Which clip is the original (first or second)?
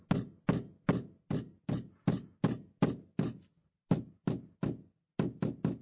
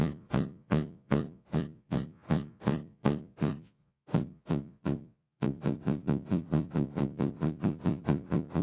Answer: first